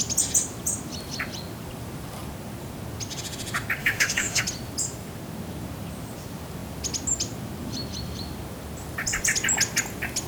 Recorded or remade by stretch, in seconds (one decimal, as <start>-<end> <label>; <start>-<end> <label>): 0.0-3.8 recorded; 3.8-4.4 remade; 4.4-10.3 recorded